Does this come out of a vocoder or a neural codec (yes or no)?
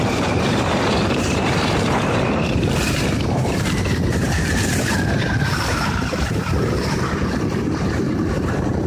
yes